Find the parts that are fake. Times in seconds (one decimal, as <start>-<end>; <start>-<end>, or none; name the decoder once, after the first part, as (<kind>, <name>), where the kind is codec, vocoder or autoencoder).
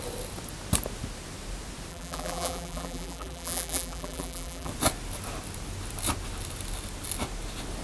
1.9-4.7 (vocoder, BigVGAN v2)